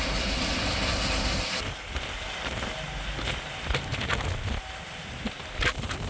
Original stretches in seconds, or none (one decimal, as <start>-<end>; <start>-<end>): 0.0-6.1